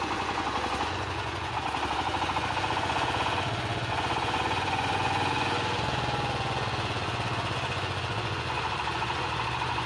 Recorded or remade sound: remade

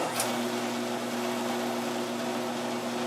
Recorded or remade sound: recorded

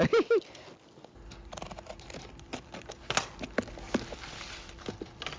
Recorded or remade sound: recorded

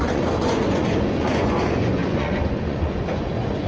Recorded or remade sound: remade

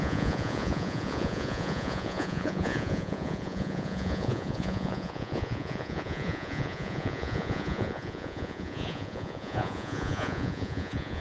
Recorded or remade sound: remade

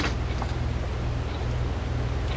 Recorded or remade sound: recorded